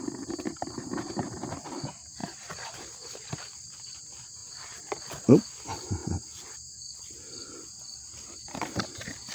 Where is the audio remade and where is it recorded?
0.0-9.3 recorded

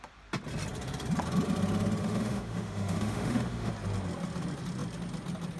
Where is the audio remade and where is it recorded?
0.0-2.0 recorded; 2.0-3.7 remade; 3.7-5.6 recorded